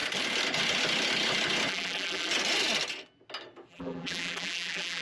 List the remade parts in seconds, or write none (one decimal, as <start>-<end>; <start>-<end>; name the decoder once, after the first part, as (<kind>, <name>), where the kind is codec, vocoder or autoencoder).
1.7-2.3 (vocoder, BigVGAN v2); 3.7-5.0